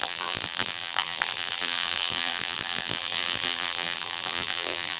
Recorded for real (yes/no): no